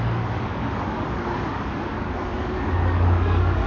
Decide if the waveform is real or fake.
fake